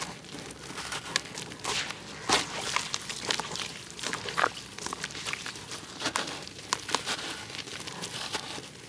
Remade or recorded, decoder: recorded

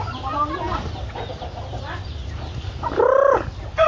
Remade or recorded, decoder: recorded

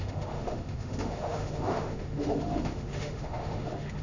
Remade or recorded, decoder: remade, autoencoder, DAC-VAE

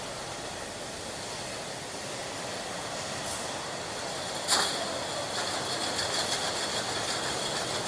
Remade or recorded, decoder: recorded